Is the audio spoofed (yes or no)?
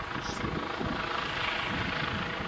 no